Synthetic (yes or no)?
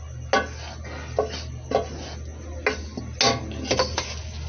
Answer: no